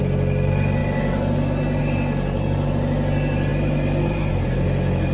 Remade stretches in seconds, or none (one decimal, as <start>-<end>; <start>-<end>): none